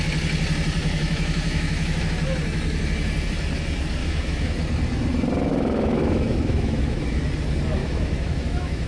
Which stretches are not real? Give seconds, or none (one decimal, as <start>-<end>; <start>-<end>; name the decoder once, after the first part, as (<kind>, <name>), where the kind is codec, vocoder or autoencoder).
0.8-2.0 (autoencoder, DAC-VAE); 4.0-4.5; 5.5-7.2; 7.8-8.9